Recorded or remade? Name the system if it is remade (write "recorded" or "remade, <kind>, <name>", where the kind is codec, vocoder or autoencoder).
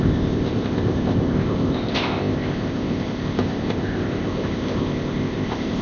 remade, codec, ZipCodec